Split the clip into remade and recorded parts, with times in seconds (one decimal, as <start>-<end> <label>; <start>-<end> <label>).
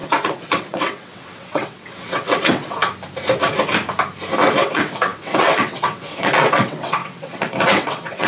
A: 0.0-2.8 remade; 2.8-4.6 recorded; 4.6-8.3 remade